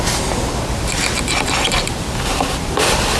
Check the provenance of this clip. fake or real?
real